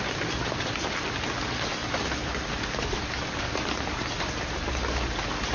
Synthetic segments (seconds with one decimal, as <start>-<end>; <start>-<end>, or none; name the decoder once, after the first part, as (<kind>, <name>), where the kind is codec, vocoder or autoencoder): none